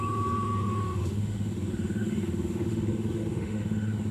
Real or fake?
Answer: fake